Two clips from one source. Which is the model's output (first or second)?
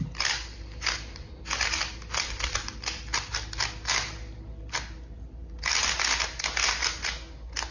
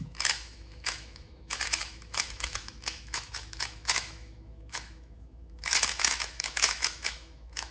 second